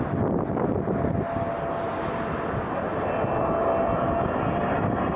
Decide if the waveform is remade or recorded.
recorded